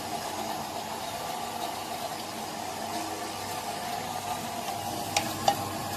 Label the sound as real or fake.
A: real